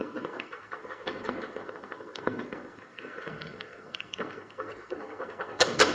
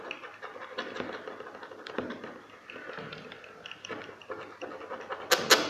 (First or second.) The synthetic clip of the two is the first